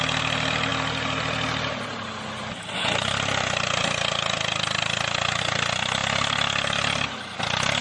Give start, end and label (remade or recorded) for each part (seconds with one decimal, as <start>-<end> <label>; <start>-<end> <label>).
0.0-7.8 recorded